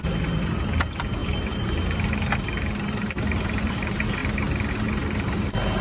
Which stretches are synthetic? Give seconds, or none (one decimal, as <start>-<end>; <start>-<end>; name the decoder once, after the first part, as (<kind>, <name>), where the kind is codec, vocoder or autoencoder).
0.0-4.2 (vocoder, BigVGAN v2); 4.7-5.8